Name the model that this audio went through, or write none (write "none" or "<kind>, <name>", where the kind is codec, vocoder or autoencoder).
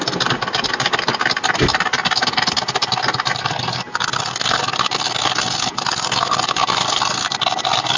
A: none